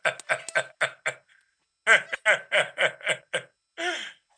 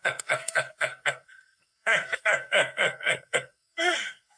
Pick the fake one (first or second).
second